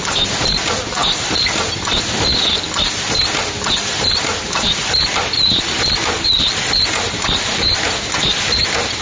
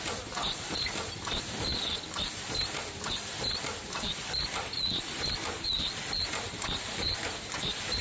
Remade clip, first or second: second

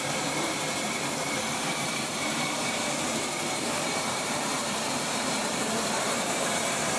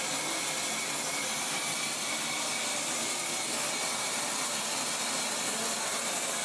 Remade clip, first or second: first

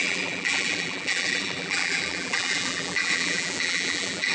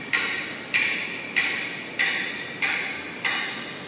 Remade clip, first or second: first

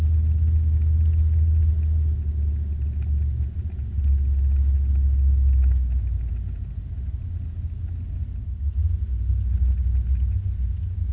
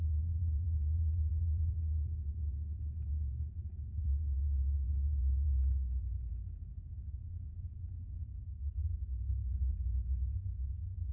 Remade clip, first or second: second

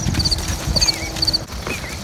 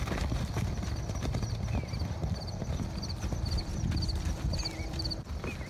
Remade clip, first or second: second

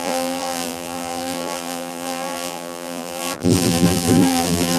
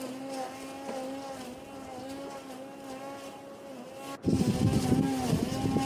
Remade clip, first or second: first